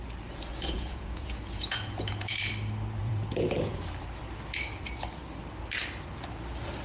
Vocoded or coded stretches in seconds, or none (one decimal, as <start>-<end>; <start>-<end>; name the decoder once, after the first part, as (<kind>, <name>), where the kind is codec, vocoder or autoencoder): 0.5-2.5 (vocoder, Vocos); 3.0-3.8